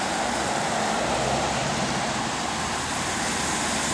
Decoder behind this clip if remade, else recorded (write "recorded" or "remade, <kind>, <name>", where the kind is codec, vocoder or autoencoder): remade, vocoder, BigVGAN v2